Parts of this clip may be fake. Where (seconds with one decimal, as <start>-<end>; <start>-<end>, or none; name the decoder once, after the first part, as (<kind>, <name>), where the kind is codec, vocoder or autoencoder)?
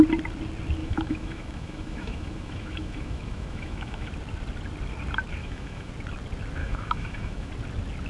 0.8-4.1 (autoencoder, DAC-VAE); 5.4-5.9; 6.6-7.5